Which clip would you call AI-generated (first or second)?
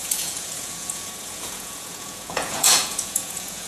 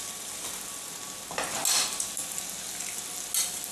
first